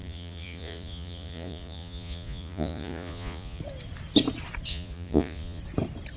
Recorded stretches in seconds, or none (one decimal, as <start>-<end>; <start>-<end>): 3.6-4.7; 5.6-6.2